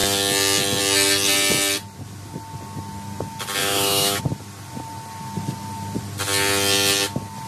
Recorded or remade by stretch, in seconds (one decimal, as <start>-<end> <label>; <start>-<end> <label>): 0.0-3.6 recorded; 3.6-4.2 remade; 4.2-7.5 recorded

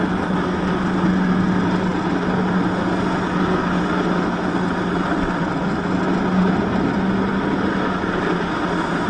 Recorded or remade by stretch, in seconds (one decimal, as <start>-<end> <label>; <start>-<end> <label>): 0.0-9.1 recorded

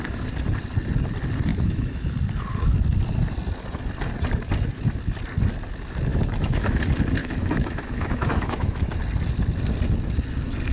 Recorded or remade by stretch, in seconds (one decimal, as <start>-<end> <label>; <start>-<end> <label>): 0.0-1.5 recorded; 1.5-2.1 remade; 2.1-6.1 recorded; 6.1-6.8 remade; 6.8-7.2 recorded; 7.2-8.9 remade; 8.9-10.7 recorded

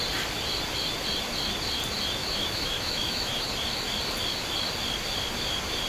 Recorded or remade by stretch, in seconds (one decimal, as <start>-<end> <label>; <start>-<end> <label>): 0.0-2.2 recorded; 2.2-3.4 remade; 3.4-5.9 recorded

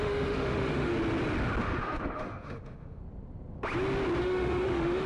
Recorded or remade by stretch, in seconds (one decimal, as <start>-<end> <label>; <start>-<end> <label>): 0.0-0.9 remade; 0.9-1.6 recorded; 1.6-3.0 remade; 3.0-4.2 recorded; 4.2-5.1 remade

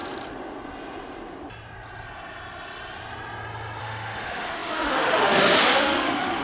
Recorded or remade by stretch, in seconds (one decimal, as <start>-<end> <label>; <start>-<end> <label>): 0.0-3.8 recorded; 3.8-6.4 remade